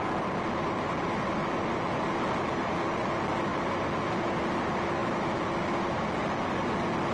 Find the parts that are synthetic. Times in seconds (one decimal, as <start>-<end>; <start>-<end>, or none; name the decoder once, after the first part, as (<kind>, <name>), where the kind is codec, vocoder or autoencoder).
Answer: none